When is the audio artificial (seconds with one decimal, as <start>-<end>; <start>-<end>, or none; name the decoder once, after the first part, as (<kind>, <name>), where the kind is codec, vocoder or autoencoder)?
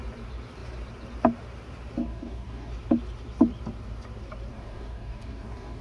2.0-2.7 (codec, DAC); 4.5-5.8